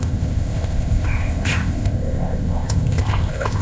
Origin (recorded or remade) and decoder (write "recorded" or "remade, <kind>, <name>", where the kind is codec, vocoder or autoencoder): remade, codec, ZipCodec